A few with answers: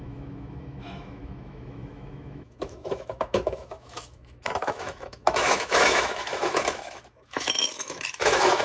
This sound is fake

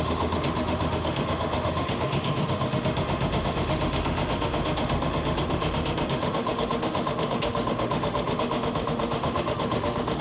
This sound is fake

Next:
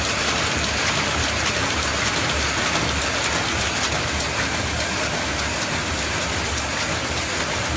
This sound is real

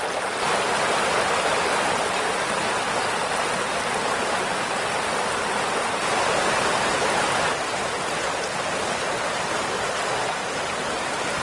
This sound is real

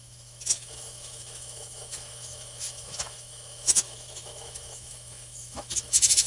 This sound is fake